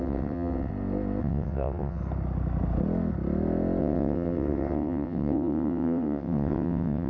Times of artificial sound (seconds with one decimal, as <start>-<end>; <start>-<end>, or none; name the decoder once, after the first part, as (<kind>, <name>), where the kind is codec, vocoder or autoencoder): 0.0-0.7 (vocoder, WaveNeXt); 1.2-2.0; 3.8-7.1